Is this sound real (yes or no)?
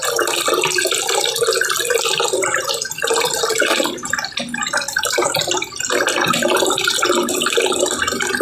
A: yes